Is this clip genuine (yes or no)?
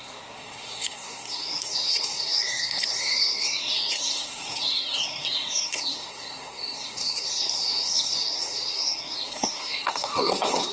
no